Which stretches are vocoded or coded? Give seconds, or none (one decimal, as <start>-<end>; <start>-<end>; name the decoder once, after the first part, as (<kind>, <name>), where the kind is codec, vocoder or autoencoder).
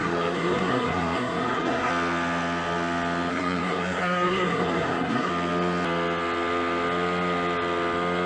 0.0-1.9 (codec, SNAC); 3.3-5.3